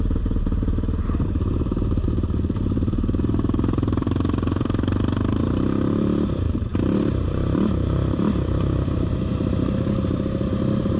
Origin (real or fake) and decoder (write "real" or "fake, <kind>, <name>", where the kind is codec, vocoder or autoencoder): fake, vocoder, BigVGAN v2